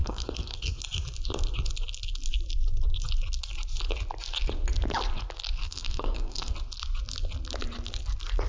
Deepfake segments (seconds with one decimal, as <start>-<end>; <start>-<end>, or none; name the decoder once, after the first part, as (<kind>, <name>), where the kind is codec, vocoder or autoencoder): 0.0-0.8 (codec, SNAC); 5.6-6.5